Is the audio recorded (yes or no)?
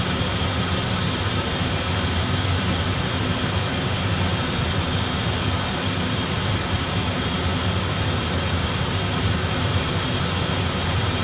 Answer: yes